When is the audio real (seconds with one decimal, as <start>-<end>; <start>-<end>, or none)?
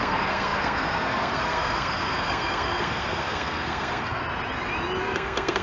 4.2-5.0